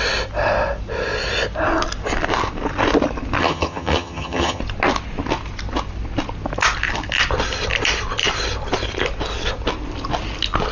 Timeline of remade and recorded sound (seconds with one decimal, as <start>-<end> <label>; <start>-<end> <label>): 0.0-3.4 recorded; 3.4-4.6 remade; 4.6-10.7 recorded